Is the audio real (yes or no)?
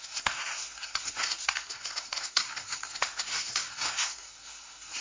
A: no